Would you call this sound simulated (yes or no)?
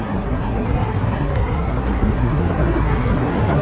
yes